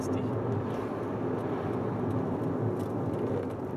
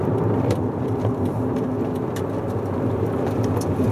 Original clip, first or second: first